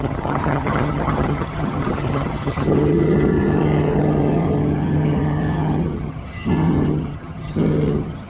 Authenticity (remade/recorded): remade